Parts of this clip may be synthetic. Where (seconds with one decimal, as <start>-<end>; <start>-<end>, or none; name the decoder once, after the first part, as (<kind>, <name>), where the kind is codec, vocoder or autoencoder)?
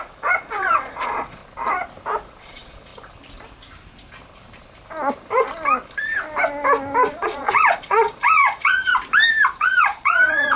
0.0-1.4 (vocoder, Vocos); 2.4-2.9; 7.1-8.9; 9.6-10.6